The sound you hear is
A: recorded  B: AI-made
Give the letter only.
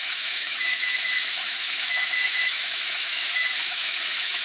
B